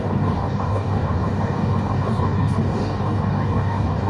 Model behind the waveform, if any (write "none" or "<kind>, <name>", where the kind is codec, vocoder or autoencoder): codec, DAC